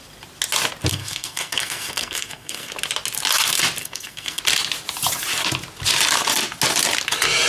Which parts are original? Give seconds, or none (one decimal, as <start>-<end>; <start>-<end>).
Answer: 0.0-0.9; 2.7-3.8; 4.4-7.5